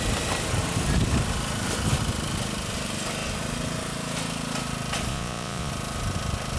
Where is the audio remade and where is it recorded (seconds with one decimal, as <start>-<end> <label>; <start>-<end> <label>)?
0.0-5.1 recorded; 5.1-5.7 remade; 5.7-6.6 recorded